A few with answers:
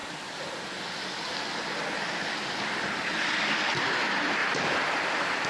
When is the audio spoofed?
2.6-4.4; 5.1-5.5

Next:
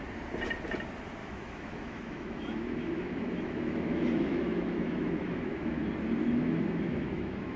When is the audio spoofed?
1.2-5.8; 6.2-7.6